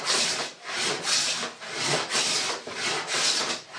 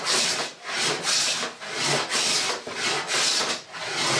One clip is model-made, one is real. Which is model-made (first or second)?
first